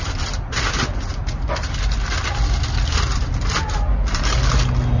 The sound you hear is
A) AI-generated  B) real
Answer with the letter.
B